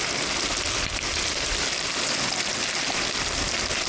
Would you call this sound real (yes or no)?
yes